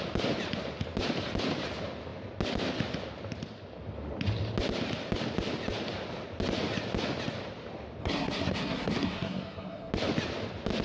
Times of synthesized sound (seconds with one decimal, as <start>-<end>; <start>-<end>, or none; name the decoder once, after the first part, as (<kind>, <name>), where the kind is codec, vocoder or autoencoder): 8.0-9.9 (codec, SNAC)